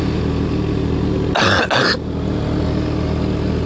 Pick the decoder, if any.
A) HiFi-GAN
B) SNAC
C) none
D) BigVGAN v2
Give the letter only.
C